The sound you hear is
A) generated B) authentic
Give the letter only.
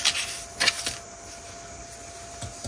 B